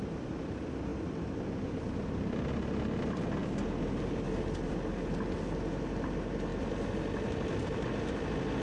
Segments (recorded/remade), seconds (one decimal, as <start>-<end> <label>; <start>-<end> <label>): 0.0-8.6 recorded